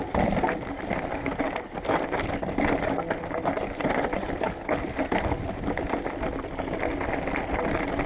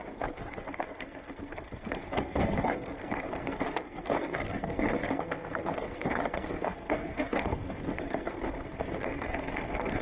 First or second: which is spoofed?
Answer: second